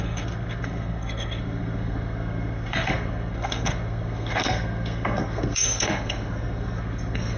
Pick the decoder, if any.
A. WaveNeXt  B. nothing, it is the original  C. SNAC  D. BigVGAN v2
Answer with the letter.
C